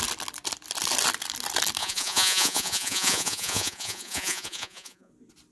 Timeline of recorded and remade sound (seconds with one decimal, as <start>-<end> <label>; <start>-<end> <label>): 0.0-1.8 recorded; 1.8-5.1 remade; 5.1-5.5 recorded

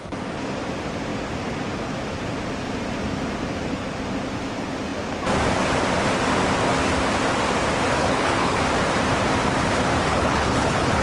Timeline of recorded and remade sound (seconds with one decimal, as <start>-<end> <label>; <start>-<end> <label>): 0.0-8.0 recorded; 8.0-8.6 remade; 8.6-10.1 recorded; 10.1-11.0 remade

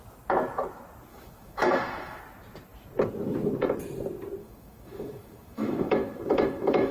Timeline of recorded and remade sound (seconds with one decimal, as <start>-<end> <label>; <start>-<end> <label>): 0.0-1.1 recorded; 1.1-2.2 remade; 2.2-4.4 recorded; 4.4-6.9 remade

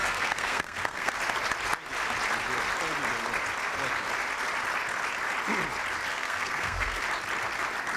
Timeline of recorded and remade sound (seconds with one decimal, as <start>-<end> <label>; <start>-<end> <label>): 0.0-1.1 remade; 1.1-6.1 recorded; 6.1-7.0 remade; 7.0-8.0 recorded

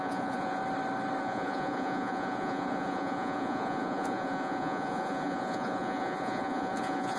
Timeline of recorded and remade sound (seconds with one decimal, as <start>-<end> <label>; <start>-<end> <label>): 0.0-0.6 remade; 0.6-1.2 recorded; 1.2-7.2 remade

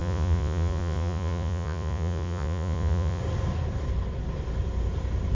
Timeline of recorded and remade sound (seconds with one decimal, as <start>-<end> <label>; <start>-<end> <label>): 0.0-3.2 remade; 3.2-5.3 recorded